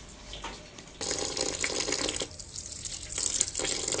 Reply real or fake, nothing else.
real